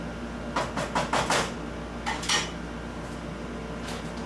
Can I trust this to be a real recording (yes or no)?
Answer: yes